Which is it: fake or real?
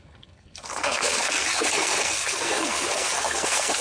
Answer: fake